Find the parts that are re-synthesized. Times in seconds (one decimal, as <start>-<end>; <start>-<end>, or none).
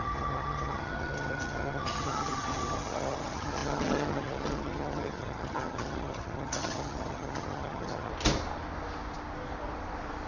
0.0-8.1